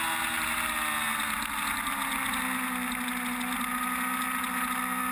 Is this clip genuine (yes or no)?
yes